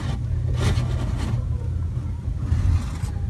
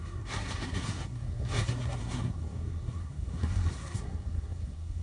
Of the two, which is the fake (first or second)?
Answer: second